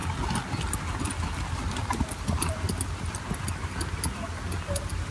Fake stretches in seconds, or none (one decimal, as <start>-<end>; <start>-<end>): none